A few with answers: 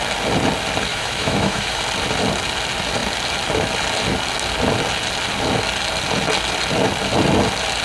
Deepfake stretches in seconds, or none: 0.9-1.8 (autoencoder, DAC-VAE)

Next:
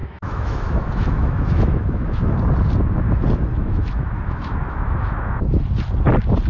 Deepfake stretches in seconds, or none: 0.0-2.2 (autoencoder, DAC-VAE); 3.5-5.6

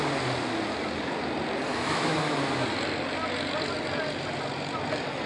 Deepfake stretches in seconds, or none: 1.7-2.3 (autoencoder, DAC-VAE)

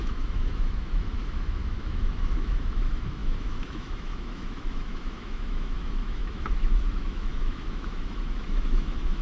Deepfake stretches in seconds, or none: 0.0-9.2 (autoencoder, DAC-VAE)

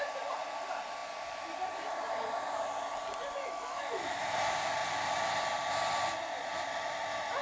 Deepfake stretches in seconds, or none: 3.4-4.2 (autoencoder, DAC-VAE)